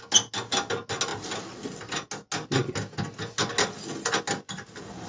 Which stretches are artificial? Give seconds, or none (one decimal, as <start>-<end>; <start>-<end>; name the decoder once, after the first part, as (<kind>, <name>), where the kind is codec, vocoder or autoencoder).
none